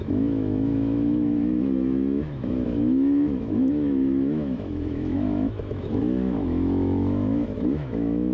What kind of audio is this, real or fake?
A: fake